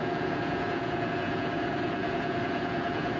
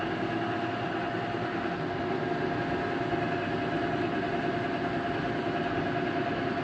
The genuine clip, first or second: second